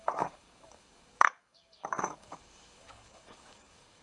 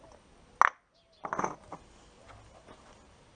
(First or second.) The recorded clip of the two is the second